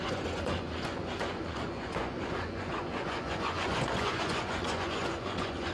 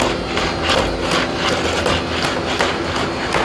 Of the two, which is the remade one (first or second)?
first